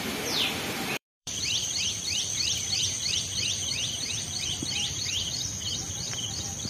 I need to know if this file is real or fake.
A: fake